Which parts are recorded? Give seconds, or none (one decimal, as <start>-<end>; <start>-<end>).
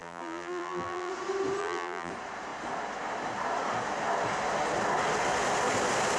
1.1-1.6; 2.1-6.2